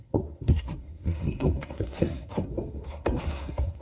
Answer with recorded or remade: remade